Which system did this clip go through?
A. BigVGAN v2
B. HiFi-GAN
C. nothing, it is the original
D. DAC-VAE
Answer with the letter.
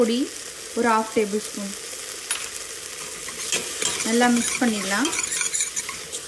C